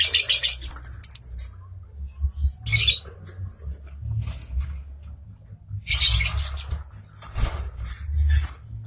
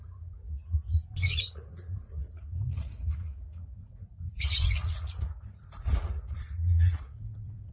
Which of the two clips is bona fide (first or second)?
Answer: first